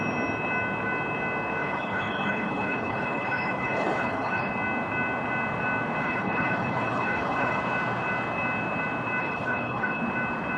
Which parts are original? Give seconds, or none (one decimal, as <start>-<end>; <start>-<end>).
0.0-1.6; 4.5-6.0; 7.6-9.2; 10.0-10.6

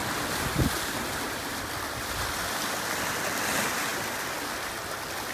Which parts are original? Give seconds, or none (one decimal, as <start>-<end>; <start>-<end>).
0.0-5.3